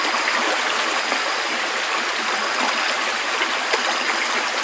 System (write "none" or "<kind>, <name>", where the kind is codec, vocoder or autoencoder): none